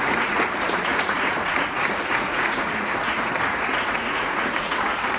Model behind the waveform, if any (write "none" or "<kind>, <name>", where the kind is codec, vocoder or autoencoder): vocoder, Vocos